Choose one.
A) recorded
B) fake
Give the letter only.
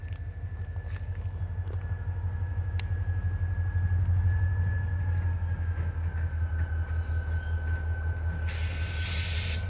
A